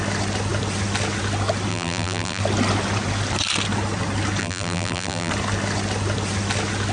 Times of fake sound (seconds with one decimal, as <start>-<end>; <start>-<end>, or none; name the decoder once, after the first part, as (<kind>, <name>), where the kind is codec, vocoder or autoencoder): 1.7-2.4 (vocoder, BigVGAN v2); 4.4-5.3